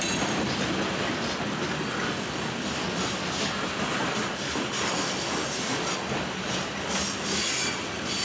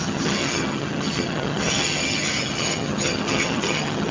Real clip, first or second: first